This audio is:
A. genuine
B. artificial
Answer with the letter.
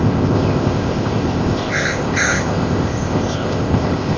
B